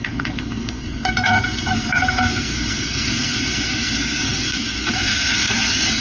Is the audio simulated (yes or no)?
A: yes